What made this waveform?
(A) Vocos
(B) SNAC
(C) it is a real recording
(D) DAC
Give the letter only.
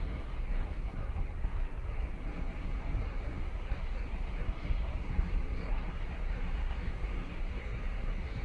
B